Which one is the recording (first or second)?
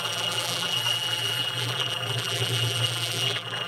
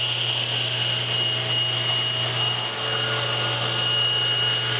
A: second